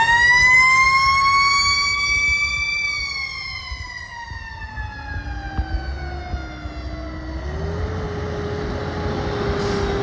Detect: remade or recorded recorded